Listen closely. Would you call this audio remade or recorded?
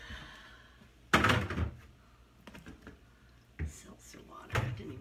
recorded